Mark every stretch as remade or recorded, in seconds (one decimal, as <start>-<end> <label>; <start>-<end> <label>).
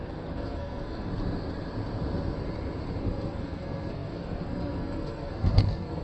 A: 0.0-1.1 remade; 1.1-3.0 recorded; 3.0-6.0 remade